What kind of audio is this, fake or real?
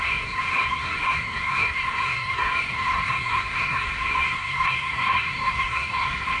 fake